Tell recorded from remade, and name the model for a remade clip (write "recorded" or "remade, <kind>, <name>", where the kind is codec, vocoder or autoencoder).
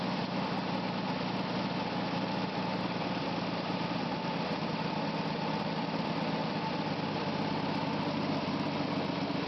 recorded